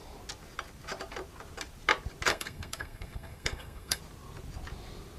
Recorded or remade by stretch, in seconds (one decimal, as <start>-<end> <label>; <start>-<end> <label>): 0.0-2.3 recorded; 2.3-4.0 remade; 4.0-5.2 recorded

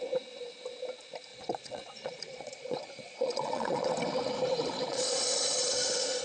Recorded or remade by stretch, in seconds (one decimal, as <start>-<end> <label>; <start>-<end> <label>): 0.0-1.3 recorded; 1.3-3.9 remade; 3.9-4.9 recorded; 4.9-5.7 remade; 5.7-6.2 recorded

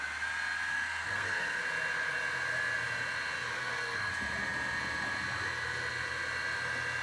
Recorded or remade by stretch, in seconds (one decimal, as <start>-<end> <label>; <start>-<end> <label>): 0.0-0.7 recorded; 0.7-1.6 remade; 1.6-3.5 recorded; 3.5-4.1 remade; 4.1-7.0 recorded

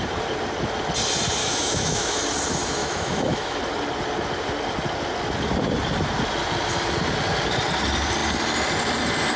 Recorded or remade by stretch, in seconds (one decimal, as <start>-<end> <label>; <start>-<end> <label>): 0.0-1.4 recorded; 1.4-2.2 remade; 2.2-2.8 recorded; 2.8-3.6 remade; 3.6-9.4 recorded

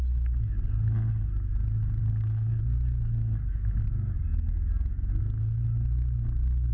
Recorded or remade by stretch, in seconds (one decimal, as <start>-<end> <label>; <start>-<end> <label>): 0.0-2.0 recorded; 2.0-2.6 remade; 2.6-6.7 recorded